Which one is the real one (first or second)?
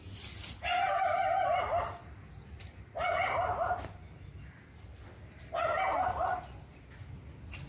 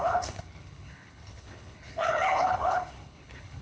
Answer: first